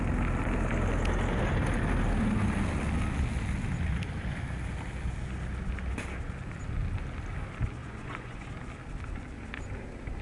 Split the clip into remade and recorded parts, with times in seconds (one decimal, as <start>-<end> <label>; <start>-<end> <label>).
0.0-7.8 recorded; 7.8-8.5 remade; 8.5-10.2 recorded